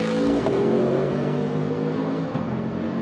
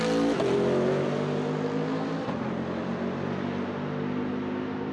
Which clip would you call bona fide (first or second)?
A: second